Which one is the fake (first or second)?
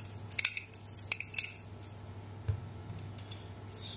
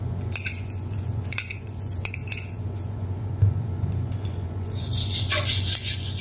second